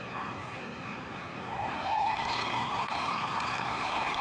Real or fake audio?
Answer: fake